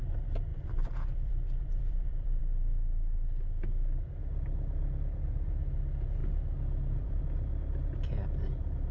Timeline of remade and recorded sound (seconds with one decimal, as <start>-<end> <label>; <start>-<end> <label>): 0.0-0.5 recorded; 0.5-2.4 remade; 2.4-6.2 recorded; 6.2-7.2 remade; 7.2-8.9 recorded